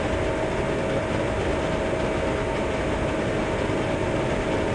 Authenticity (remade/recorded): recorded